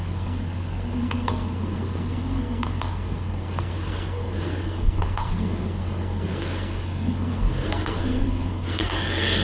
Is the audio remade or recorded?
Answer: remade